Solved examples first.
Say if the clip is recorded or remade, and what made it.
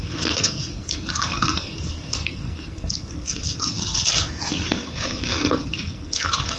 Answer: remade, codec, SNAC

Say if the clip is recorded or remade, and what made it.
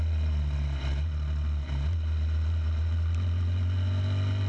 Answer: recorded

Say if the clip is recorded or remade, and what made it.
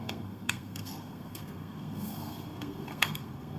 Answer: remade, codec, SNAC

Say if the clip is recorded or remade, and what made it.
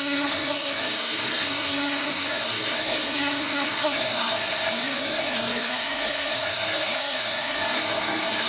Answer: remade, codec, SNAC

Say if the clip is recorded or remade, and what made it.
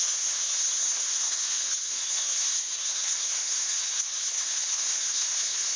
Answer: remade, codec, SNAC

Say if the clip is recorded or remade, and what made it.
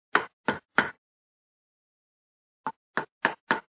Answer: recorded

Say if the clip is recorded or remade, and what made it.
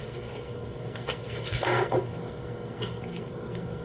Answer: remade, codec, SNAC